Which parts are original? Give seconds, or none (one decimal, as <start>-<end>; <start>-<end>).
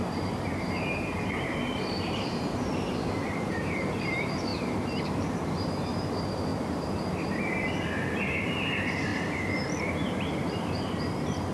6.5-8.2; 9.1-9.8